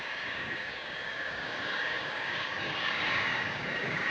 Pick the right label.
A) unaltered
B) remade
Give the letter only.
B